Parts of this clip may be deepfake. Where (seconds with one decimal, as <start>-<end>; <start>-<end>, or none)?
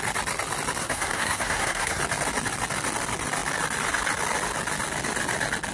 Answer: 0.8-2.0